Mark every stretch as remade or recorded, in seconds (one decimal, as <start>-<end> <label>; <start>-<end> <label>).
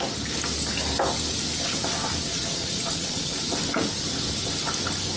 0.0-2.3 recorded; 2.3-3.3 remade; 3.3-5.2 recorded